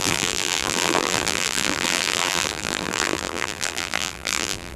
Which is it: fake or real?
fake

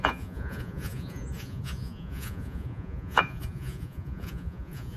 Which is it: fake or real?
fake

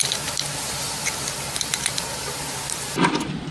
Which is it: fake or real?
fake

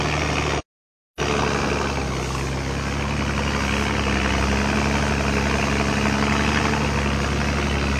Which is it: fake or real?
real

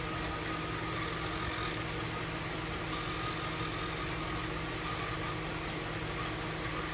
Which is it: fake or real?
real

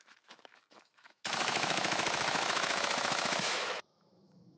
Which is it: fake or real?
fake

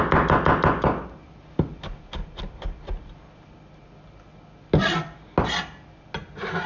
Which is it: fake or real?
real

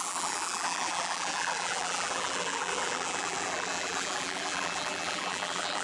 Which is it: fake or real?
fake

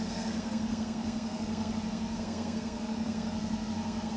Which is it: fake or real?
fake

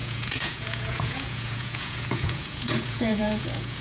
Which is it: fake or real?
fake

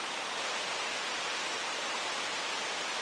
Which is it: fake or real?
real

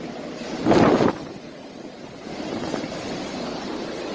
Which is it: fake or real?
real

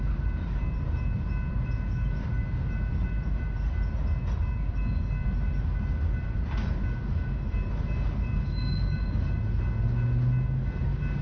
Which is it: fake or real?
real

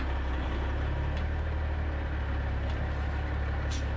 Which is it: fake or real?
real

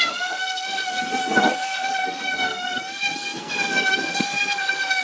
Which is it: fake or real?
fake